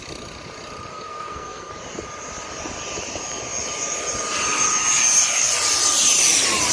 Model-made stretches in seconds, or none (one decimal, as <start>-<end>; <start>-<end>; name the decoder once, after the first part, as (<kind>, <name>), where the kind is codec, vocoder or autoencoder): 0.9-1.7 (codec, SNAC)